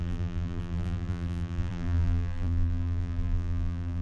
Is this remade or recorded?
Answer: remade